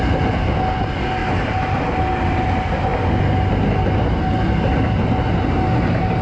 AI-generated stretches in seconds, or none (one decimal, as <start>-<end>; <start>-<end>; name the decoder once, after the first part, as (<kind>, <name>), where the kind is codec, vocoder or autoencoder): none

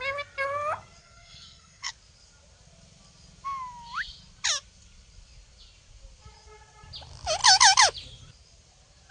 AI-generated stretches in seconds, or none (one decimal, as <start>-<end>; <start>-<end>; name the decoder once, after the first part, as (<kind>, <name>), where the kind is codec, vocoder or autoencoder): 1.0-1.9 (codec, SNAC)